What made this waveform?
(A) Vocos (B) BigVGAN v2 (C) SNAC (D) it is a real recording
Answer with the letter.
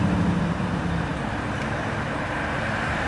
D